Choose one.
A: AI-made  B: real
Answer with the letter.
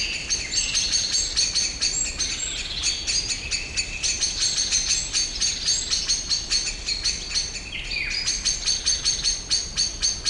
B